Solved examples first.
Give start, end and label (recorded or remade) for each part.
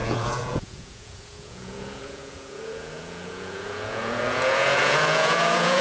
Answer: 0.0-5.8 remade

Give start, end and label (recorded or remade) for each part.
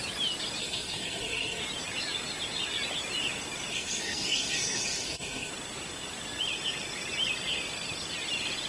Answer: 0.0-0.6 recorded; 0.6-1.6 remade; 1.6-3.7 recorded; 3.7-5.5 remade; 5.5-8.7 recorded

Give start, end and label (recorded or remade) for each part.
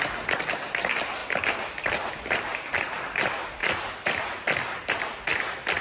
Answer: 0.0-5.8 recorded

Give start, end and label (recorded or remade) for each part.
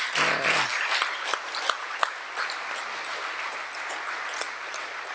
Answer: 0.0-5.1 recorded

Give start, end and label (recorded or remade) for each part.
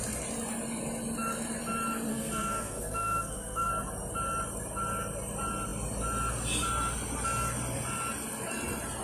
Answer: 0.0-2.1 recorded; 2.1-3.7 remade; 3.7-9.0 recorded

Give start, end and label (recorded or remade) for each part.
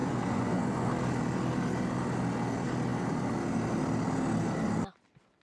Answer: 0.0-0.9 remade; 0.9-5.4 recorded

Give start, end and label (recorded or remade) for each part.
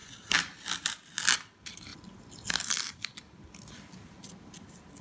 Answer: 0.0-5.0 recorded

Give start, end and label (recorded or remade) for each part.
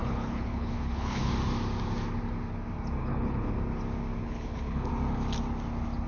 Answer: 0.0-1.3 remade; 1.3-3.0 recorded; 3.0-3.5 remade; 3.5-4.2 recorded; 4.2-4.9 remade; 4.9-6.1 recorded